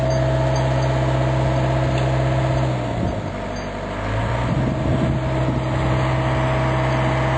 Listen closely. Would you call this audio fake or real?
real